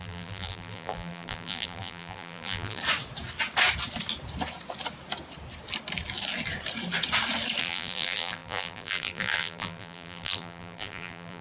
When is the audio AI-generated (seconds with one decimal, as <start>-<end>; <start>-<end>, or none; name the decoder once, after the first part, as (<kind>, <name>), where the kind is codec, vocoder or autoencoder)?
0.0-2.8 (vocoder, BigVGAN v2); 7.6-11.4

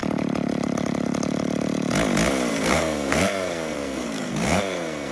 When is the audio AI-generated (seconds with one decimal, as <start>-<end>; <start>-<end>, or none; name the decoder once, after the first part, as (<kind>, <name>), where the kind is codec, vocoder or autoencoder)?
2.5-5.1 (codec, SNAC)

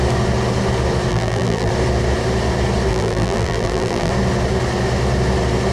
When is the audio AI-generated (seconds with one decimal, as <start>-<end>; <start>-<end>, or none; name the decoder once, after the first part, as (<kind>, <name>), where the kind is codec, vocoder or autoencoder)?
1.1-1.7 (vocoder, BigVGAN v2); 2.9-4.1